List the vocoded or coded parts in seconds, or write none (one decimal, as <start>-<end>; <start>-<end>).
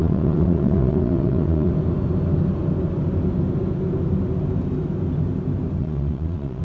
0.0-1.7; 5.8-6.6